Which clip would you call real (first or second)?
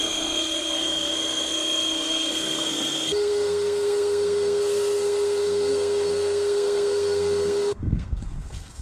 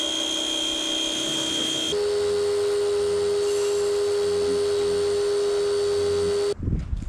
second